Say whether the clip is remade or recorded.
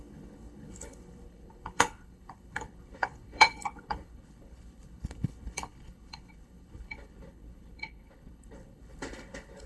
remade